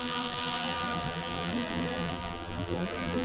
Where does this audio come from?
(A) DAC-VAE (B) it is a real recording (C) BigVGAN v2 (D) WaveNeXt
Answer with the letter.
C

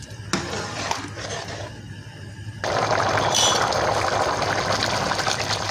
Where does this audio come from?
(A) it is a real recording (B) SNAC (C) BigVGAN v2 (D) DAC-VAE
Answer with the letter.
A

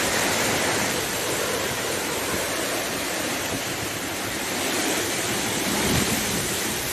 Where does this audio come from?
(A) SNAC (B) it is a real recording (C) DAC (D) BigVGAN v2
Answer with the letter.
D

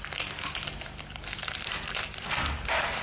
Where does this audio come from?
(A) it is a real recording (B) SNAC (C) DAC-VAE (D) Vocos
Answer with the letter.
A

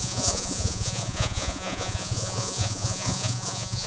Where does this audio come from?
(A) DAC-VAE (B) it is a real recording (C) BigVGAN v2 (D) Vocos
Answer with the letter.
D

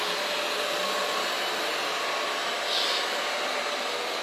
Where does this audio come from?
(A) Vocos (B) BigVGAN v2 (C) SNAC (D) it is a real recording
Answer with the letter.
D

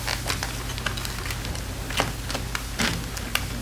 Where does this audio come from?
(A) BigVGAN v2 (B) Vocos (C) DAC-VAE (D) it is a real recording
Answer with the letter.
D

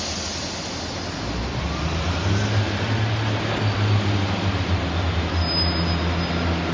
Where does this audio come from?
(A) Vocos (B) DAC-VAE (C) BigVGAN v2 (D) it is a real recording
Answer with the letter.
D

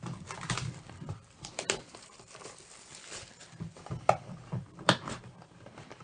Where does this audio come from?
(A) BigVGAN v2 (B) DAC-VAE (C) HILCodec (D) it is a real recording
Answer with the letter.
A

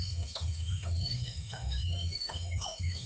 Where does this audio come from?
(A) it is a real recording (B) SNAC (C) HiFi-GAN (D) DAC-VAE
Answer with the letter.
D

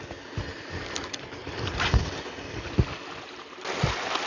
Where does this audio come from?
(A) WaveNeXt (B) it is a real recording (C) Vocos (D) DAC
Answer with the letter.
B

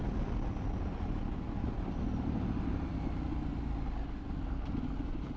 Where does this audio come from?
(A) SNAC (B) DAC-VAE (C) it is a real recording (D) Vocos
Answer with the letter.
C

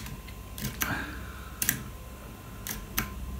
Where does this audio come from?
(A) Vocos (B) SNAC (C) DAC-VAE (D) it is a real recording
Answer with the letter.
D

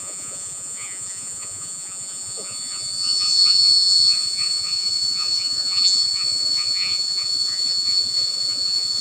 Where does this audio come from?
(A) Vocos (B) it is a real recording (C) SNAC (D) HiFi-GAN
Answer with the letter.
A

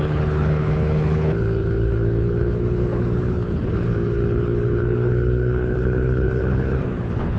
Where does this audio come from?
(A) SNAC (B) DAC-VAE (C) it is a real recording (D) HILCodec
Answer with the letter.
D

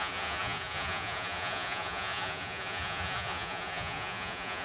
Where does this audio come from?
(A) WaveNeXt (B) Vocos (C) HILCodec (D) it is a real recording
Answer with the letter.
B